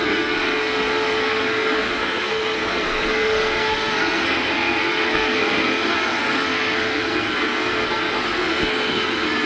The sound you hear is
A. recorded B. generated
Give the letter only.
B